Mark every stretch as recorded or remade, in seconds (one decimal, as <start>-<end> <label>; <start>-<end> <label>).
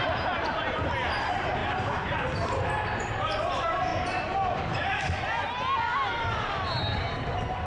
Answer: 0.0-1.6 remade; 1.6-3.5 recorded; 3.5-3.9 remade; 3.9-6.2 recorded; 6.2-7.7 remade